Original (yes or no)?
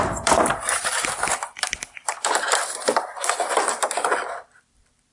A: no